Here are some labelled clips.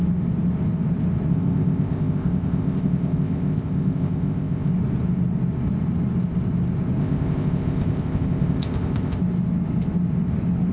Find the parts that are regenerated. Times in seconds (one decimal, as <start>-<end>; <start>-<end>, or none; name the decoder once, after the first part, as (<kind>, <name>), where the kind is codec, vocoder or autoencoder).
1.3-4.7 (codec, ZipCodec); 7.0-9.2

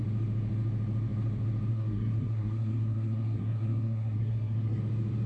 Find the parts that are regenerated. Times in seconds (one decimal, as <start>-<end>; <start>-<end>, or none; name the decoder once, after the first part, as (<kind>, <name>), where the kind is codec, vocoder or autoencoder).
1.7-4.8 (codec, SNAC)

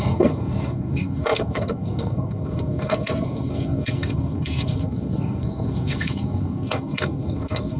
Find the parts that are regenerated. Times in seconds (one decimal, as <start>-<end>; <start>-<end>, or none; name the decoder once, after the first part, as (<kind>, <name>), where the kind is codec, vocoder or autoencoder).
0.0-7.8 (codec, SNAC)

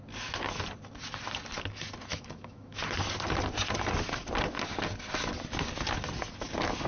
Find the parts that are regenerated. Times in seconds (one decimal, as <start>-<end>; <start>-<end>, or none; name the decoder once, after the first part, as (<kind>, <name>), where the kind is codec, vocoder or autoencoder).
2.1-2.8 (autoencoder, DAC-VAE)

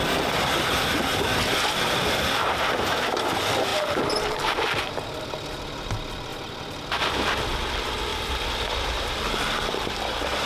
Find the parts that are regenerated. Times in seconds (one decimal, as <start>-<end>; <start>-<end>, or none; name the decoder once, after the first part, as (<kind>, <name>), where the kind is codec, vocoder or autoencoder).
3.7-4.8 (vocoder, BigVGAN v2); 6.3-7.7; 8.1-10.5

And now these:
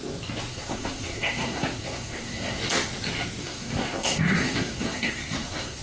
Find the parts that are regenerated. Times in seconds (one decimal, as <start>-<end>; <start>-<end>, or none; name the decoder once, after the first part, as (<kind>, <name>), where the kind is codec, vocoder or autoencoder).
0.5-2.6 (codec, SNAC); 3.4-5.8

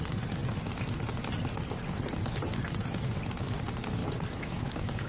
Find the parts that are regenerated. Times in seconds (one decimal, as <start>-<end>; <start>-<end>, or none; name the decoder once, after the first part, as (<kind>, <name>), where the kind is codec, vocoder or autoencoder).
4.0-5.1 (codec, DAC)